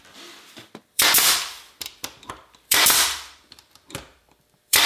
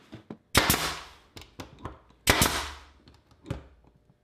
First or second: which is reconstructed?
first